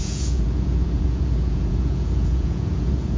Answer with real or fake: fake